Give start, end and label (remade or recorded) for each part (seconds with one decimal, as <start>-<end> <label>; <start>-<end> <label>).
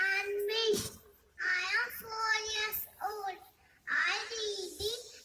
0.0-1.1 recorded; 1.1-3.5 remade; 3.5-5.2 recorded